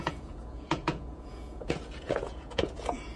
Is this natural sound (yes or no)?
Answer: no